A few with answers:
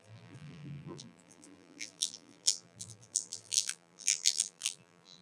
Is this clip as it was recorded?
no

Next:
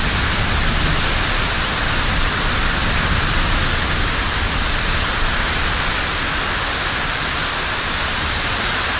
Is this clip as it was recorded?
yes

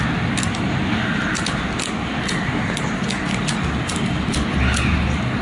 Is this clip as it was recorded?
yes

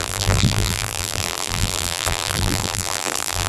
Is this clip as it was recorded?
no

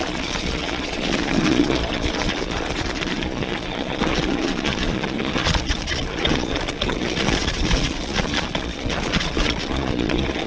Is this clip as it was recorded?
no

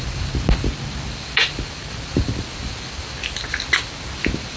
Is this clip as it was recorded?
yes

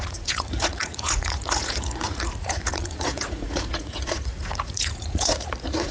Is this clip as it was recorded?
no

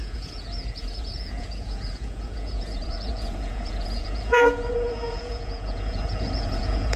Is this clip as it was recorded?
no